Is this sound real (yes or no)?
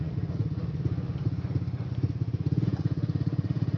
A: no